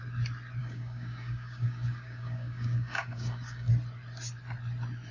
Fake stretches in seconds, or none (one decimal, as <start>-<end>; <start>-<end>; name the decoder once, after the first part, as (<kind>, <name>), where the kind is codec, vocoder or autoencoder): 0.6-3.7 (codec, DAC)